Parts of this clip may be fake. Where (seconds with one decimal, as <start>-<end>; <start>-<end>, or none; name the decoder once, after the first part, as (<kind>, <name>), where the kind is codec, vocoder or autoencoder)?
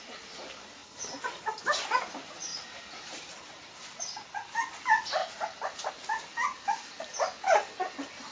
2.5-4.0 (vocoder, BigVGAN v2); 5.2-5.9